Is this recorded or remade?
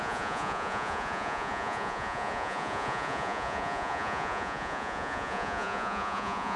remade